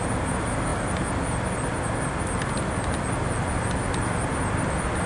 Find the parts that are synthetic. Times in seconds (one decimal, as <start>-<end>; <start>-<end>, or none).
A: none